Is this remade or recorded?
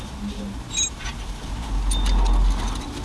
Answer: recorded